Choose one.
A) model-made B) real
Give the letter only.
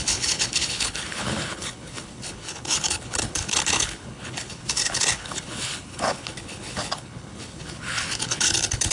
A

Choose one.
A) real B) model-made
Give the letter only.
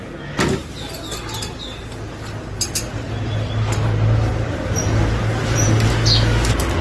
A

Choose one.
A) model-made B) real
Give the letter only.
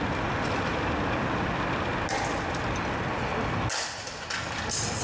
B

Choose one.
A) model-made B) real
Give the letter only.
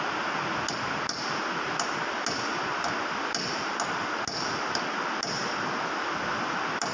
B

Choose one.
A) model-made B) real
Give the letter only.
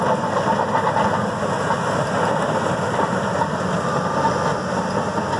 B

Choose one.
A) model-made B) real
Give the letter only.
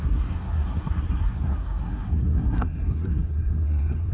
A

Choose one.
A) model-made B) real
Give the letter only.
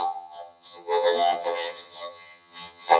A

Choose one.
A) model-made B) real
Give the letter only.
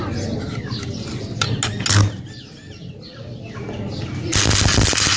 B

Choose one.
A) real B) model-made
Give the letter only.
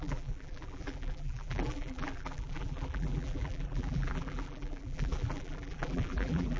B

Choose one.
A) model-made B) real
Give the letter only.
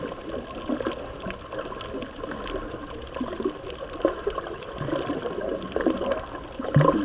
B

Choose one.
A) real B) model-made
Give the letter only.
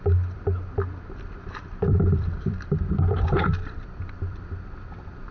B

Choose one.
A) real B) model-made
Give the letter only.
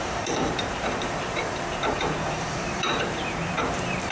B